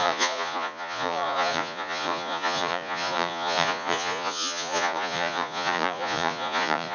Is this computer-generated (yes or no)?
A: yes